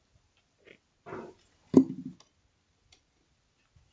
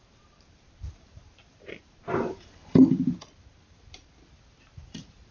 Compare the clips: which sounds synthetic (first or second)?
second